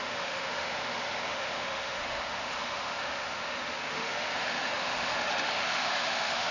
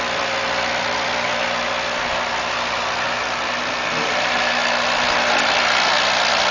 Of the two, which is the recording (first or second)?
second